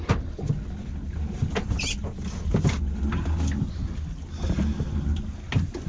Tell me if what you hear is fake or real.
real